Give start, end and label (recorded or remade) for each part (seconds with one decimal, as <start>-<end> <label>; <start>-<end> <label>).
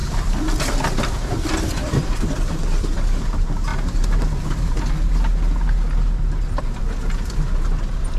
0.0-3.2 remade; 3.2-8.2 recorded